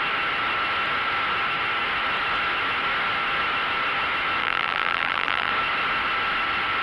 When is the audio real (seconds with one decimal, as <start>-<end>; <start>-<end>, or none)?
0.0-4.4; 5.5-6.8